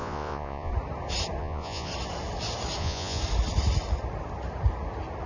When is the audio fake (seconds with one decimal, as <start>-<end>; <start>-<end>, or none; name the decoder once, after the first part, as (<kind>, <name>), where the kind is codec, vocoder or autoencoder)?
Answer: 0.0-0.7 (vocoder, Vocos); 1.4-1.9; 2.8-3.2